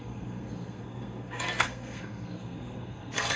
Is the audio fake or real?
fake